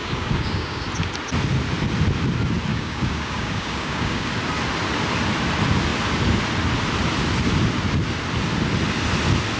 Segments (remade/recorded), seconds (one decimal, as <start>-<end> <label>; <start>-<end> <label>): 0.0-0.8 remade; 0.8-2.7 recorded; 2.7-4.3 remade; 4.3-9.6 recorded